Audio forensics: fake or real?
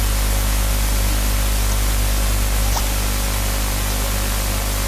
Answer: real